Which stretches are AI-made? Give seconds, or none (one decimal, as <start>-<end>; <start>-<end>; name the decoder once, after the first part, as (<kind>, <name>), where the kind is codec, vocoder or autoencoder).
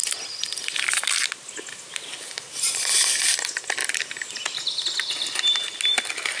none